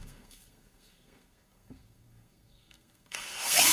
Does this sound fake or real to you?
fake